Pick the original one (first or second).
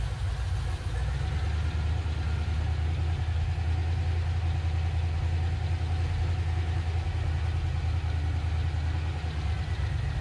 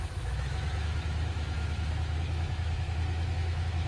first